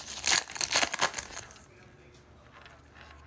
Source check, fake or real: real